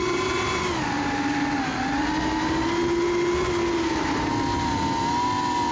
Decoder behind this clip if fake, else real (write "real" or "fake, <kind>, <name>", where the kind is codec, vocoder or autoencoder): real